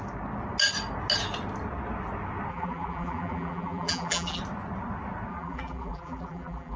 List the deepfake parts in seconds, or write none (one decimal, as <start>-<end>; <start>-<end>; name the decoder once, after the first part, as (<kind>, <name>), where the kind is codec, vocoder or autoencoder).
2.5-4.4 (vocoder, BigVGAN v2); 5.3-6.8